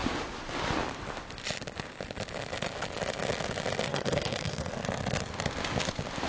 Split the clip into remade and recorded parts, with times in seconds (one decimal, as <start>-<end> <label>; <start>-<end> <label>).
0.0-3.9 recorded; 3.9-4.7 remade; 4.7-6.3 recorded